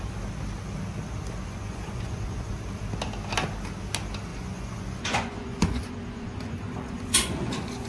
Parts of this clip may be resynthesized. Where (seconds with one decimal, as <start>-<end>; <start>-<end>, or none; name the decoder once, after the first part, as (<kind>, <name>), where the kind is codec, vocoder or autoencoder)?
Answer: 1.4-2.5 (vocoder, Vocos); 4.3-7.9